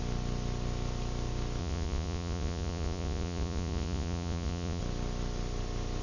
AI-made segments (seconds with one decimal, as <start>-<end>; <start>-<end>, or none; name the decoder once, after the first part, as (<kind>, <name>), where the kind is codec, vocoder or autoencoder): 1.6-4.8 (vocoder, Vocos)